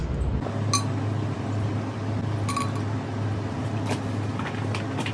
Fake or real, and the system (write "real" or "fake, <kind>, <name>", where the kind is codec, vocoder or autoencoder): real